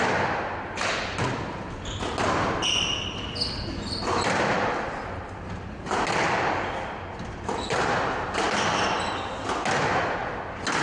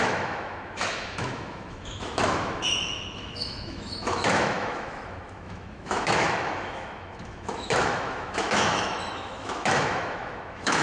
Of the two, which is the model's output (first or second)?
second